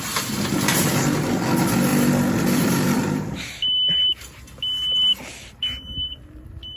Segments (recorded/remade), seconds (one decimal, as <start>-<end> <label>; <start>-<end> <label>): 0.0-1.9 recorded; 1.9-3.3 remade; 3.3-6.8 recorded